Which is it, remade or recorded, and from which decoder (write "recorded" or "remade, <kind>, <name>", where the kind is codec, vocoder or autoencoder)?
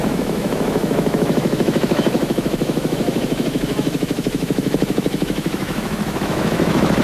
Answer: remade, autoencoder, DAC-VAE